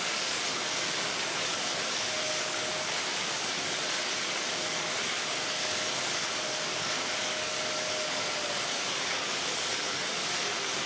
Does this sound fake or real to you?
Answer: fake